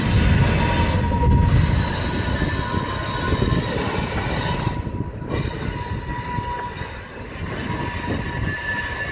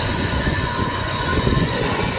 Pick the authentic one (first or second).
first